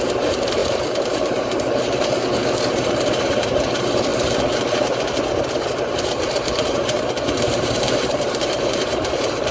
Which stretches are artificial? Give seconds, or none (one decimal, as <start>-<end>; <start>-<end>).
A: 0.0-4.1; 5.8-9.5